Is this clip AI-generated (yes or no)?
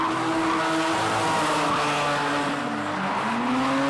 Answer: no